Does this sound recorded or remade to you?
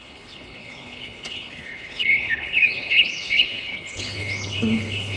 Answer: remade